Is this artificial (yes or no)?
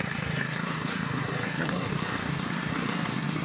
yes